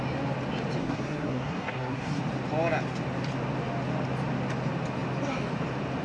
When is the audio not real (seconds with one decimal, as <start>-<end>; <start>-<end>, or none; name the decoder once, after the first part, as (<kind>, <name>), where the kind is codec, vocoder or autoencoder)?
0.8-2.2 (codec, SNAC)